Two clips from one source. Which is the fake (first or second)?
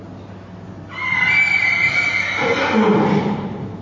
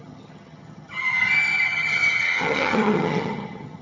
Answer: second